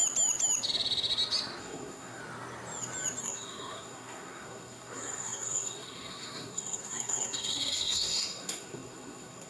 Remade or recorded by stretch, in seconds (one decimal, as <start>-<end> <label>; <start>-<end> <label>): 0.0-1.6 recorded; 1.6-2.2 remade; 2.2-3.2 recorded; 3.2-9.5 remade